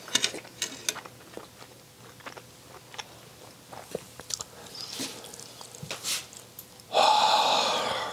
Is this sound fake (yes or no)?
no